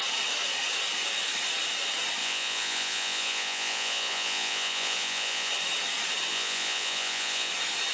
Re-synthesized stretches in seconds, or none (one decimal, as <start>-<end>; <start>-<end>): 2.2-5.5; 6.3-7.5